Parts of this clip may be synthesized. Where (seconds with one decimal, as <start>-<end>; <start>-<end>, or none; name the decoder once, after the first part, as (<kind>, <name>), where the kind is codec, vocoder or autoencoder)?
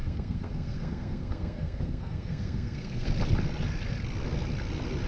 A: 0.0-3.1 (codec, SNAC)